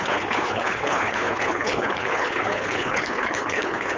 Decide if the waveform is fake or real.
fake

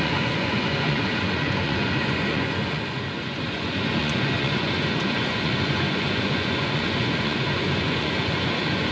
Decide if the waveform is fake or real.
fake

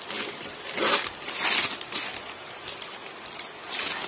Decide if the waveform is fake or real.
real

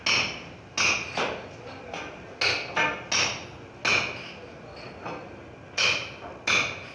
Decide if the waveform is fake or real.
real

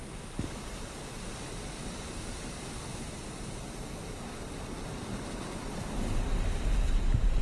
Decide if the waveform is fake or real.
real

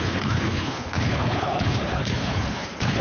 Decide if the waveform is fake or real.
fake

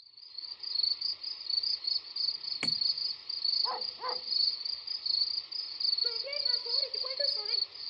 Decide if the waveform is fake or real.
real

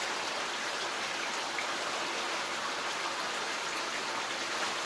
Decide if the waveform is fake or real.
real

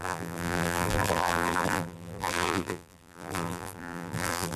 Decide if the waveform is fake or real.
fake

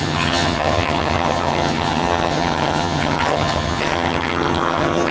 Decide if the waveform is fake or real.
fake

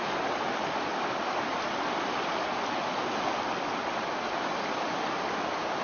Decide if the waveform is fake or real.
real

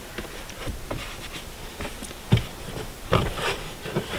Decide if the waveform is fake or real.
real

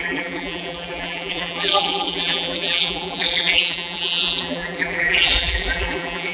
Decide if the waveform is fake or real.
fake